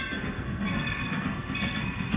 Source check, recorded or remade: remade